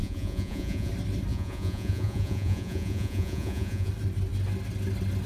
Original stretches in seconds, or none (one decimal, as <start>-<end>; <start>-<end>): 0.9-1.3; 3.9-5.3